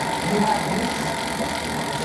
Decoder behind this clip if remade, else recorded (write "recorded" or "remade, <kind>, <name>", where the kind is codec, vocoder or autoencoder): recorded